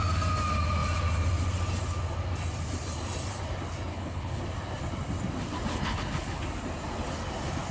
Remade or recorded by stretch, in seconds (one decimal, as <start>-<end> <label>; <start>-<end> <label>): 0.0-3.9 recorded; 3.9-4.4 remade; 4.4-5.7 recorded; 5.7-6.4 remade; 6.4-7.7 recorded